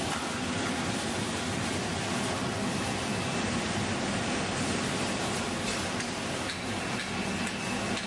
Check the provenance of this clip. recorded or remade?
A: remade